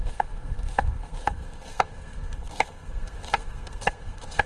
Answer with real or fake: fake